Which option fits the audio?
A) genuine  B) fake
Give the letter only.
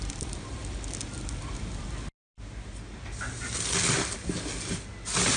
A